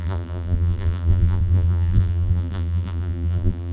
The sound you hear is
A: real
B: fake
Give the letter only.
B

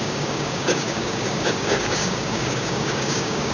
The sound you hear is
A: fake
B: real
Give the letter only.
A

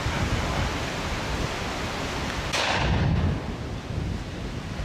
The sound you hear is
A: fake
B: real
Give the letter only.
B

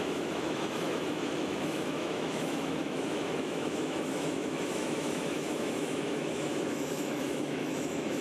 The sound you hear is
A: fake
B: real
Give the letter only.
A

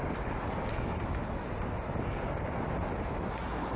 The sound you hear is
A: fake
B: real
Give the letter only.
B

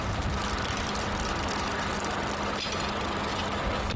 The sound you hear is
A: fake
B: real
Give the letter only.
B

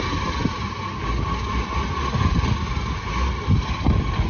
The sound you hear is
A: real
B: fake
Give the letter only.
A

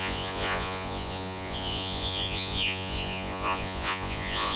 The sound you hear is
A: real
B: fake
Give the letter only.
B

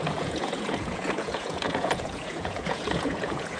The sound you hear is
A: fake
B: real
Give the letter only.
A